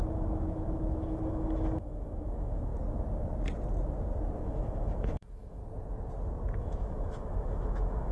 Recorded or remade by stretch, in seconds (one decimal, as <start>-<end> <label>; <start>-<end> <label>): 0.0-2.7 remade; 2.7-4.5 recorded; 4.5-5.6 remade; 5.6-6.6 recorded; 6.6-8.1 remade